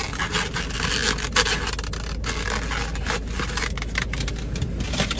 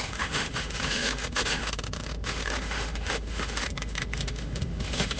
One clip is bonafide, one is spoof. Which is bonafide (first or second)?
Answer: first